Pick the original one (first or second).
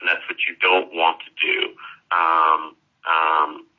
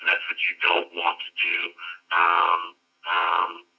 first